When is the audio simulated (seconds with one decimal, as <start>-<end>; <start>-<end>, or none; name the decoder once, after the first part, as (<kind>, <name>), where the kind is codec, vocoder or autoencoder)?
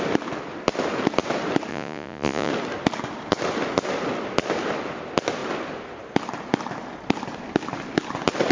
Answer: 1.7-2.5 (vocoder, Vocos)